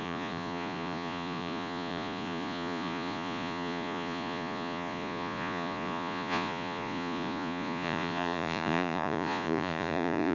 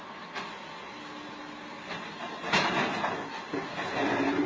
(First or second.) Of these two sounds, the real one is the second